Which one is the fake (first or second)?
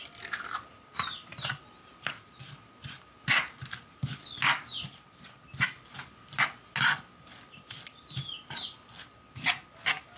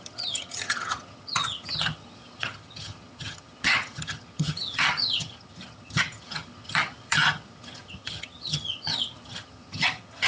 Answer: second